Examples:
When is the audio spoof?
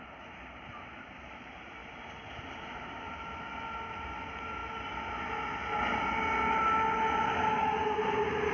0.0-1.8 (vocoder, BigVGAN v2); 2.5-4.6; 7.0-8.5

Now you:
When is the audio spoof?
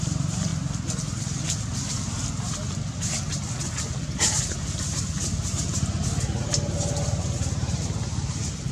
0.0-0.5 (vocoder, BigVGAN v2); 5.5-6.0; 7.1-8.7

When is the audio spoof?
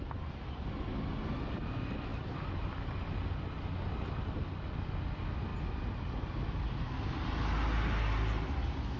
2.1-3.4 (vocoder, BigVGAN v2); 5.5-6.2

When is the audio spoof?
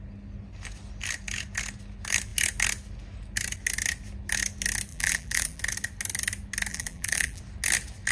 4.9-5.6 (vocoder, BigVGAN v2); 6.7-7.4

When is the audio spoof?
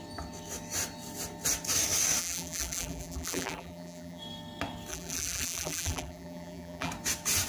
2.2-4.2 (vocoder, BigVGAN v2); 4.9-6.9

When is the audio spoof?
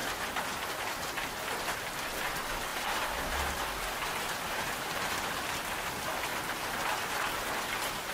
2.7-3.2 (vocoder, BigVGAN v2)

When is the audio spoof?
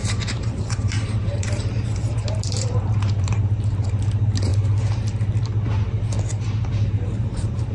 0.0-4.5 (vocoder, BigVGAN v2); 6.7-7.7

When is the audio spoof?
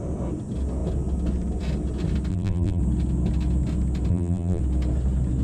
2.3-2.8 (vocoder, BigVGAN v2); 4.1-4.6